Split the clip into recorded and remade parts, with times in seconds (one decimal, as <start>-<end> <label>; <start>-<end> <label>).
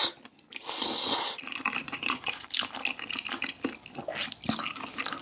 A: 0.0-1.8 recorded; 1.8-2.5 remade; 2.5-5.2 recorded